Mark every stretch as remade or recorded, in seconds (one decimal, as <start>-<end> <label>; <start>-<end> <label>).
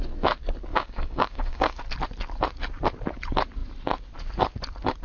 0.0-0.7 recorded; 0.7-1.8 remade; 1.8-5.0 recorded